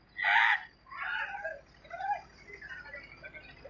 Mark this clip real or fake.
real